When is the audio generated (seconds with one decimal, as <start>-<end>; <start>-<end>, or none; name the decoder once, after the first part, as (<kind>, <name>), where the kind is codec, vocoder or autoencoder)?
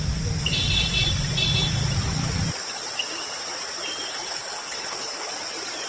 4.1-5.3 (codec, HILCodec)